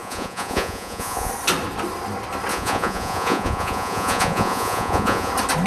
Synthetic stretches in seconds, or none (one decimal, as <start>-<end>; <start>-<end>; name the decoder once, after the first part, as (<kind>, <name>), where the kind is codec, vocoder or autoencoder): 0.0-1.3 (vocoder, Vocos); 2.5-5.3